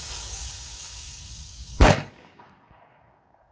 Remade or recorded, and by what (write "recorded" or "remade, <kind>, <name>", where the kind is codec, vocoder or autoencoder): remade, codec, DAC